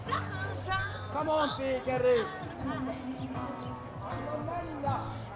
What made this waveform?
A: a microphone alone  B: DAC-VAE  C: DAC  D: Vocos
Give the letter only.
A